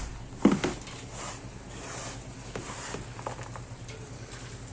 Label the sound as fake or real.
real